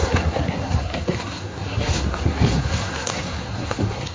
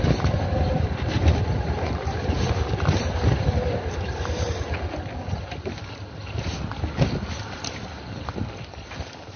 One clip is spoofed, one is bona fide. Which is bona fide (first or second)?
second